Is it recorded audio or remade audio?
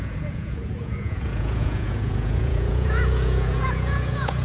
remade